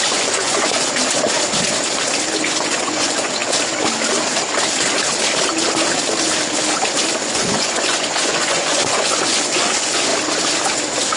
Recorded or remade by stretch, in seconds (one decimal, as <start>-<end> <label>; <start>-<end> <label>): 0.0-1.0 remade; 1.0-2.4 recorded; 2.4-3.4 remade; 3.4-7.2 recorded; 7.2-10.1 remade; 10.1-11.2 recorded